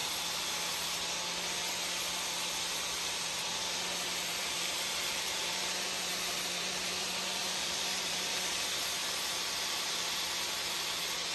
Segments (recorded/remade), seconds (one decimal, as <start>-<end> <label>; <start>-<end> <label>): 0.0-4.3 recorded; 4.3-8.5 remade; 8.5-11.3 recorded